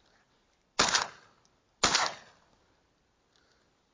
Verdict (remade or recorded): recorded